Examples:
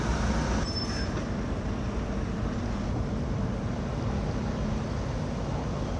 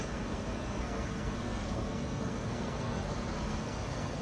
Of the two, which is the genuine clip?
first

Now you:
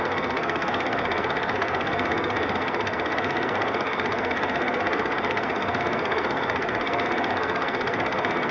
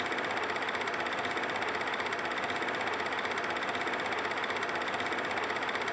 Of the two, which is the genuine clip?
second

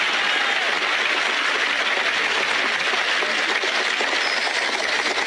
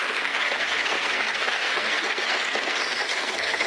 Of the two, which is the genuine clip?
first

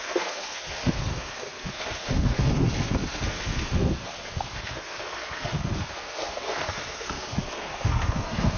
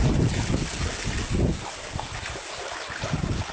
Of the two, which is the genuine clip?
second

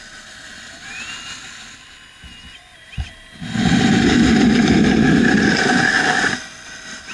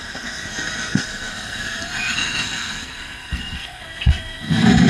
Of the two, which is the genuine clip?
first